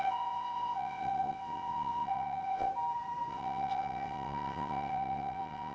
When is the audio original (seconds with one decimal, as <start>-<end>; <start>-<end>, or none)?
2.7-3.3